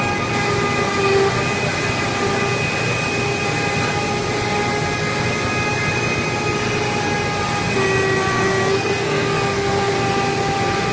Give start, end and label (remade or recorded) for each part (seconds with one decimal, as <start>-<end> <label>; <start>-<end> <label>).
0.0-8.3 recorded; 8.3-9.9 remade; 9.9-10.9 recorded

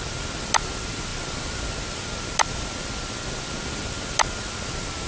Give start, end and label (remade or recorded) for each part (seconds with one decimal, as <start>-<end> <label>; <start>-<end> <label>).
0.0-5.1 recorded

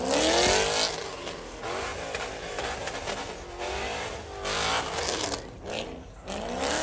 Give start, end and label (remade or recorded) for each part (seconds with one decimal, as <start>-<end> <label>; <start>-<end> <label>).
0.0-6.8 recorded

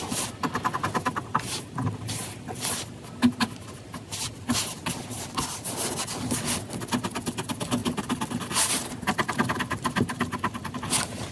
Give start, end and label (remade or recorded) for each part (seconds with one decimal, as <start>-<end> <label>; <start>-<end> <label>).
0.0-11.3 recorded

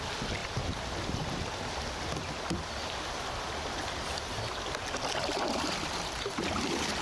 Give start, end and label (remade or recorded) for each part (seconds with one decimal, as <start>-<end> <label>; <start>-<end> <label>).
0.0-7.0 recorded

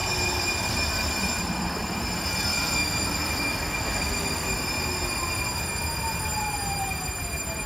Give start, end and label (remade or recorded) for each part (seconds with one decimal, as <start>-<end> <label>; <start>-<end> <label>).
0.0-2.5 recorded; 2.5-4.6 remade; 4.6-7.7 recorded